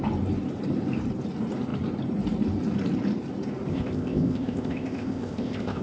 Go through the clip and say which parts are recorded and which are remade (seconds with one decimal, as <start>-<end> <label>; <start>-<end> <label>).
0.0-3.7 recorded; 3.7-5.8 remade